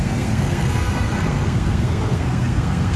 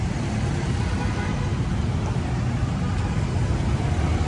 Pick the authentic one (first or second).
second